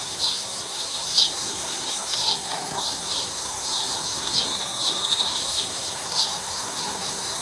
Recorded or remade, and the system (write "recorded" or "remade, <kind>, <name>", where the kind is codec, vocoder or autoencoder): remade, codec, SNAC